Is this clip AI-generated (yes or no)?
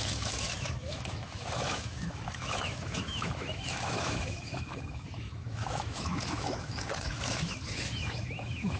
yes